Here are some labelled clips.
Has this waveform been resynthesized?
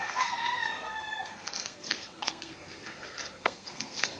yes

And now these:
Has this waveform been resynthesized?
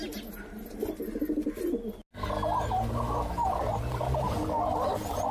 no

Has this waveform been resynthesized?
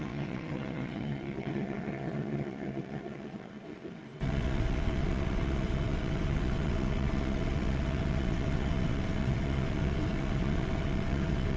yes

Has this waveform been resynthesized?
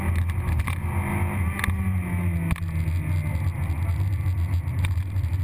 no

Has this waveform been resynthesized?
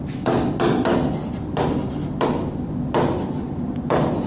no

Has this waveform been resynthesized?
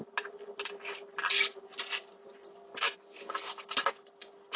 no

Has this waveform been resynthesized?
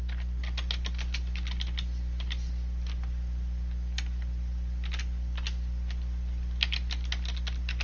no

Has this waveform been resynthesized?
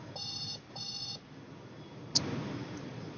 yes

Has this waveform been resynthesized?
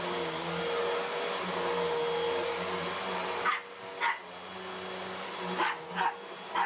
no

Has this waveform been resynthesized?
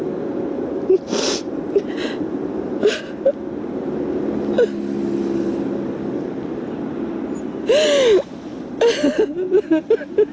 no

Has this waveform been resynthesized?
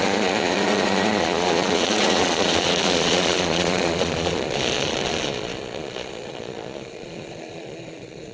yes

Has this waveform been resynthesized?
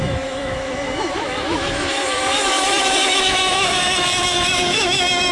yes